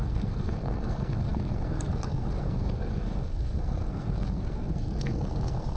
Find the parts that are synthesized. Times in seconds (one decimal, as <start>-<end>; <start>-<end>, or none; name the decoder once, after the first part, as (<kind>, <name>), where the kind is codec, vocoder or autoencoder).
0.0-5.8 (codec, SNAC)